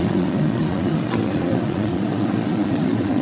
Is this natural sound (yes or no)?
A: no